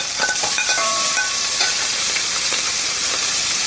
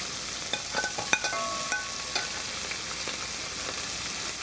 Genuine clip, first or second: second